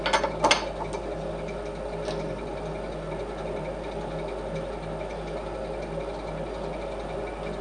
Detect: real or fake real